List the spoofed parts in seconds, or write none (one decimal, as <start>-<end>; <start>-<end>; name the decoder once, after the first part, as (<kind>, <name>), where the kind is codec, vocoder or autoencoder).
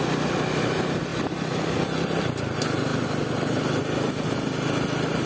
none